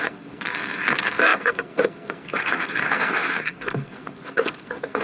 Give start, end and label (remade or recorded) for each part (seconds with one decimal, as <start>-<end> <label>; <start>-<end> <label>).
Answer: 0.0-5.0 remade